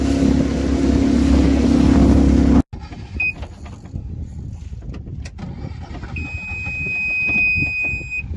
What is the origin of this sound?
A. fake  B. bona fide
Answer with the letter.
B